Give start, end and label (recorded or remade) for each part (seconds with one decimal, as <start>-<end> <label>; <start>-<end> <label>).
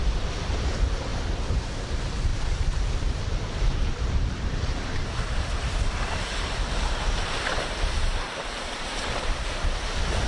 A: 0.0-1.1 remade; 1.1-1.6 recorded; 1.6-2.3 remade; 2.3-3.2 recorded; 3.2-10.3 remade